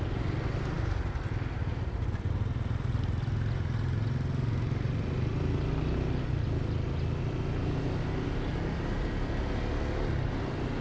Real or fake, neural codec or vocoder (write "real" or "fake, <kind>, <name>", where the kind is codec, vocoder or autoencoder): real